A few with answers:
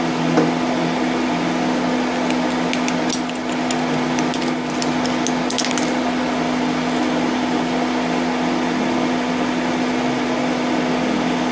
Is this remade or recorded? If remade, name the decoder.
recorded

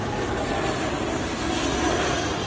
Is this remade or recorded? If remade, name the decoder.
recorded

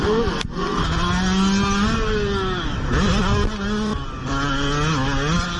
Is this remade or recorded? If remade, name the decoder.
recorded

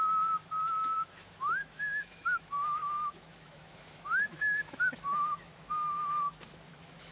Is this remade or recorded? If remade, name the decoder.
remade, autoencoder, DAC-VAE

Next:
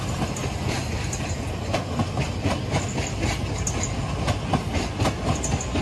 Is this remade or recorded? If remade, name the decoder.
recorded